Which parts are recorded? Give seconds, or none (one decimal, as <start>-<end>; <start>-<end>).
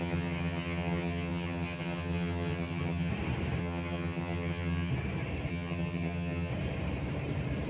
3.1-3.6; 4.9-5.5; 6.5-7.7